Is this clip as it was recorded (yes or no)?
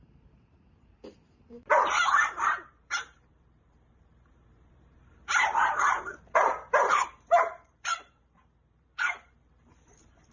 no